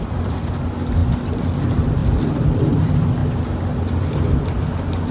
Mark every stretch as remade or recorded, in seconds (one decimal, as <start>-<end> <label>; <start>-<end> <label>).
0.0-5.1 recorded